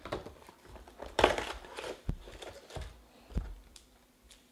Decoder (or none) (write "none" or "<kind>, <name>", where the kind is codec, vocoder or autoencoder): vocoder, BigVGAN v2